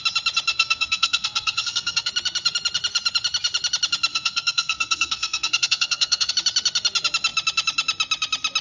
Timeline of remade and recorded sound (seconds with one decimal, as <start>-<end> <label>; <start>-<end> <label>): 0.0-0.5 recorded; 0.5-2.1 remade; 2.1-4.1 recorded; 4.1-6.3 remade; 6.3-8.6 recorded